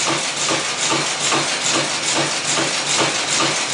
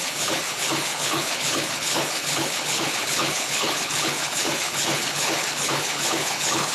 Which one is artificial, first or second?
second